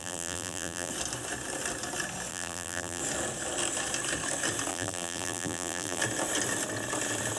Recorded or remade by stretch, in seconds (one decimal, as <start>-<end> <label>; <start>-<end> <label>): 0.0-0.9 remade; 0.9-2.3 recorded; 2.3-3.0 remade; 3.0-4.7 recorded; 4.7-6.0 remade; 6.0-7.4 recorded